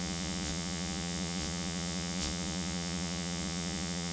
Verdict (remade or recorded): remade